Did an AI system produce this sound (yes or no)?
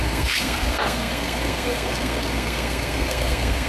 yes